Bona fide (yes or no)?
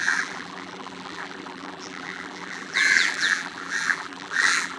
no